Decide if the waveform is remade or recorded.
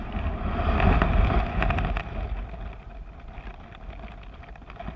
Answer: recorded